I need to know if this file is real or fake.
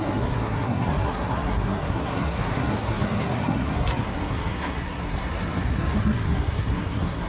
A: fake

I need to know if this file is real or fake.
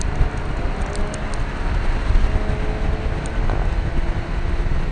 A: real